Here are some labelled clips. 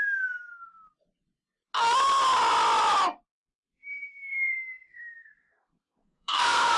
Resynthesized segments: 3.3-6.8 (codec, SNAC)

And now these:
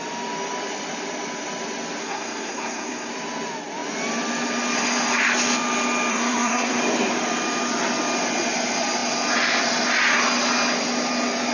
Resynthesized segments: 2.0-3.1 (codec, SNAC); 6.1-6.8

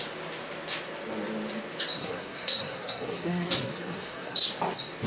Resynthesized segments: 2.0-4.5 (codec, SNAC)

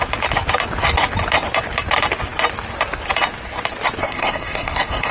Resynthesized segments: 4.0-5.1 (codec, SNAC)

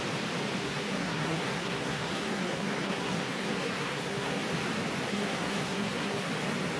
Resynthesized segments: 0.6-4.4 (codec, SNAC); 5.1-6.3

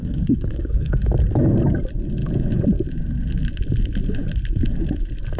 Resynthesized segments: 0.0-1.0 (codec, SNAC)